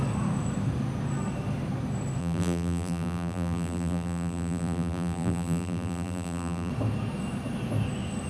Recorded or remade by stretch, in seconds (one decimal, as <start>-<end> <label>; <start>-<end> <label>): 0.0-2.2 recorded; 2.2-6.7 remade; 6.7-8.3 recorded